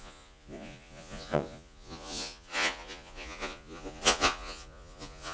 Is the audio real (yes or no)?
no